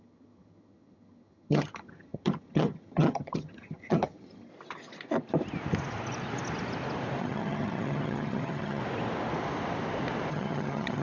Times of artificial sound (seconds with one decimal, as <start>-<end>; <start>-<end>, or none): 0.0-4.5; 7.2-8.8; 10.3-11.0